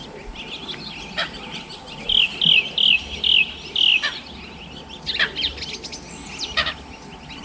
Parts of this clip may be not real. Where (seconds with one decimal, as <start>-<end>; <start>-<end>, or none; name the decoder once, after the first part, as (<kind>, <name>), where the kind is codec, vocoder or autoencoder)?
none